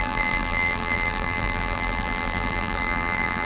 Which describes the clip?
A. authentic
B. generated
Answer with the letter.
B